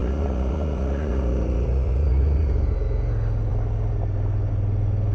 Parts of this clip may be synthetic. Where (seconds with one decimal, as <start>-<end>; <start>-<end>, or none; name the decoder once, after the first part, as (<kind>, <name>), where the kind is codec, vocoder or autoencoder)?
0.0-2.5 (vocoder, Vocos)